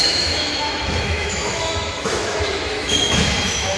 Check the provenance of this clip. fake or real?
fake